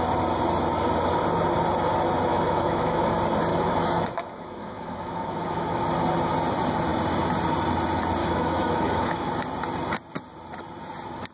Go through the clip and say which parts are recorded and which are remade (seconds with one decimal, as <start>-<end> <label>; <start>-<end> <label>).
0.0-2.3 recorded; 2.3-3.1 remade; 3.1-3.5 recorded; 3.5-5.8 remade; 5.8-8.2 recorded; 8.2-9.3 remade; 9.3-11.3 recorded